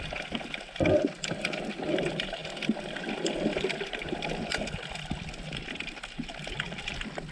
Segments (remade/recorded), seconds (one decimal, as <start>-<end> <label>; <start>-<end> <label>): 0.0-7.3 recorded